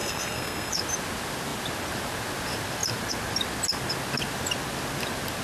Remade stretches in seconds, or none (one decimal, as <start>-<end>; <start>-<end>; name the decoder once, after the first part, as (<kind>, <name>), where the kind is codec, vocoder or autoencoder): 0.0-0.7 (codec, SNAC)